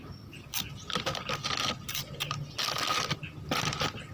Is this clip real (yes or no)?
yes